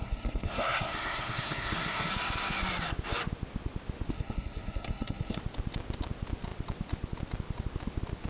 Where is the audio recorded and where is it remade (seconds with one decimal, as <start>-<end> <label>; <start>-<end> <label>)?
0.0-2.1 remade; 2.1-4.1 recorded; 4.1-5.4 remade; 5.4-8.3 recorded